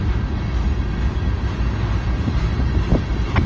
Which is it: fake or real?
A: real